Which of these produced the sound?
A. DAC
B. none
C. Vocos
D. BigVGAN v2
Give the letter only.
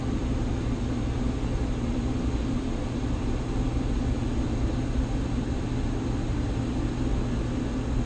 B